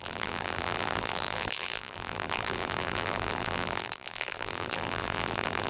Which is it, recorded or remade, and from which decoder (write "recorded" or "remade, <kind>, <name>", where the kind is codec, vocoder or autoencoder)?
remade, vocoder, BigVGAN v2